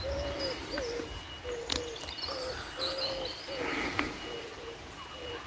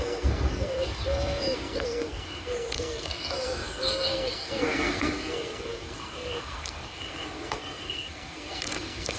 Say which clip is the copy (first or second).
second